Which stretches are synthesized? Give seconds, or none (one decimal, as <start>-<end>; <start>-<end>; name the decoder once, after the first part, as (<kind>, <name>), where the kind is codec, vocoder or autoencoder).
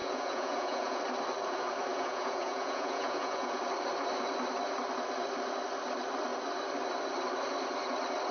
0.0-1.0 (vocoder, Vocos); 1.9-3.6